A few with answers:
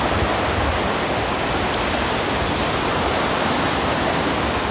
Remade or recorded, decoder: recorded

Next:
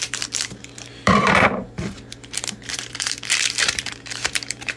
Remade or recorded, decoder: remade, vocoder, BigVGAN v2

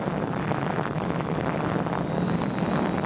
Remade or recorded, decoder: recorded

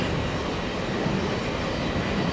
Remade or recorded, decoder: recorded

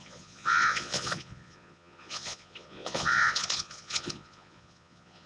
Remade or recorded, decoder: remade, vocoder, Vocos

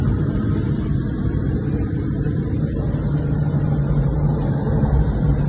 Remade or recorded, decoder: remade, vocoder, BigVGAN v2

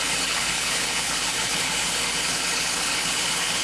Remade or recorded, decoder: remade, codec, HILCodec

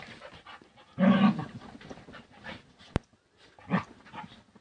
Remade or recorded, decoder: recorded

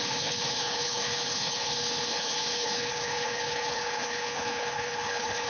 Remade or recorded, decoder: remade, codec, HILCodec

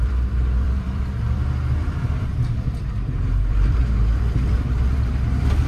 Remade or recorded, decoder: remade, vocoder, BigVGAN v2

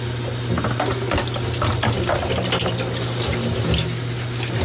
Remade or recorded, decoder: recorded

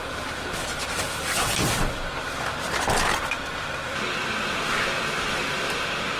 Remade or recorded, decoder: recorded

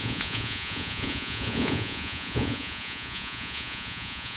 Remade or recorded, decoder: remade, vocoder, Vocos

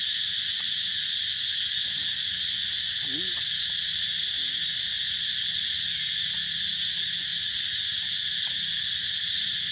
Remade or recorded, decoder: recorded